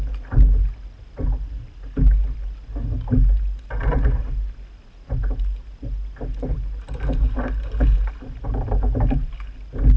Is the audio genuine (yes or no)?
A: yes